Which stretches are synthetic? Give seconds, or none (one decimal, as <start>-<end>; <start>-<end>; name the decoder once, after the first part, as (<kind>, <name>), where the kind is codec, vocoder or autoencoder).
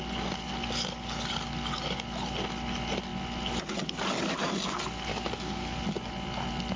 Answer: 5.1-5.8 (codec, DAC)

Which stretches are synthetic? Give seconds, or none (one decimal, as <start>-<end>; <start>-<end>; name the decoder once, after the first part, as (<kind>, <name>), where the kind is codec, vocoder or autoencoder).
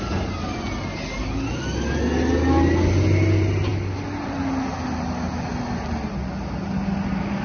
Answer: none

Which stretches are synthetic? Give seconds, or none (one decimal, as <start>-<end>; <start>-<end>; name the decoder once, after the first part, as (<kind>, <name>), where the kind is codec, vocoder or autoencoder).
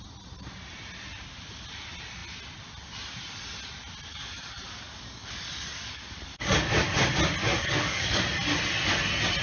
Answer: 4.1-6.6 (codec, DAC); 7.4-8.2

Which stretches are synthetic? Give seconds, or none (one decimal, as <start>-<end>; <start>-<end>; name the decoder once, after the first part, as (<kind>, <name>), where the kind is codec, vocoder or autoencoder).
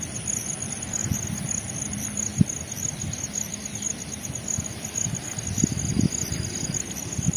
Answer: none